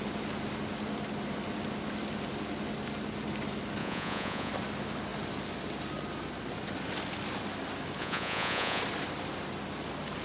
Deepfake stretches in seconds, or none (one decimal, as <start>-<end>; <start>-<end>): 3.8-4.5; 8.0-8.8